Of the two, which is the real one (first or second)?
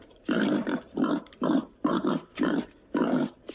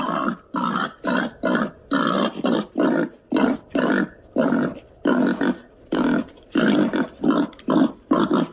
second